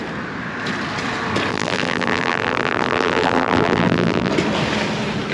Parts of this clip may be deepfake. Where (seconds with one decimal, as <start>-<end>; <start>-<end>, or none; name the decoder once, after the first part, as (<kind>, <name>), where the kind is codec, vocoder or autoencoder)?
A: 1.5-4.3 (vocoder, BigVGAN v2)